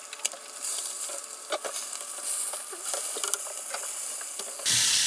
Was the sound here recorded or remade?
recorded